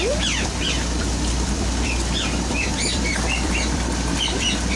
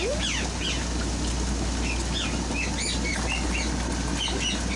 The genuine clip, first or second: second